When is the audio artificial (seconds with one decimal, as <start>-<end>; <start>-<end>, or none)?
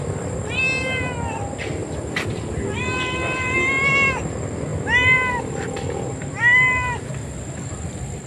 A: 1.8-3.9; 4.7-6.4